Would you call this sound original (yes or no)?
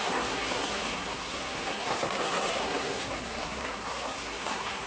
no